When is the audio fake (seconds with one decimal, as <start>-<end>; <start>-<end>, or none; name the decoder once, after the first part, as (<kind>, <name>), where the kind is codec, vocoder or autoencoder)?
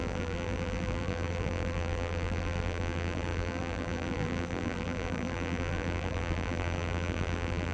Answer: 0.0-7.7 (vocoder, BigVGAN v2)